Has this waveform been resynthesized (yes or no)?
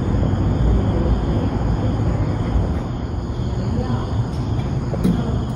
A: no